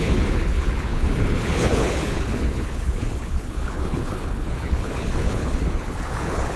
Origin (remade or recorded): remade